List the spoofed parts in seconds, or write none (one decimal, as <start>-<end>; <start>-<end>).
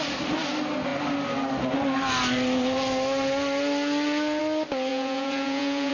4.9-5.9